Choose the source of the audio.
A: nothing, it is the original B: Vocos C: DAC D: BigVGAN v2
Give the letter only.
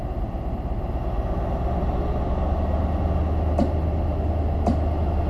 A